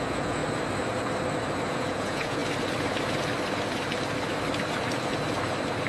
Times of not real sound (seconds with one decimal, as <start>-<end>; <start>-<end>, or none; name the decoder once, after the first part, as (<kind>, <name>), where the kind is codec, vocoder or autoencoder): 0.0-0.4 (vocoder, Vocos); 1.7-2.4